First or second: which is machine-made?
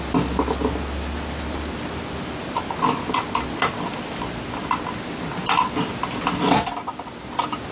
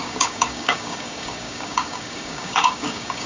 second